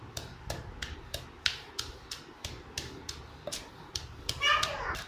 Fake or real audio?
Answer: real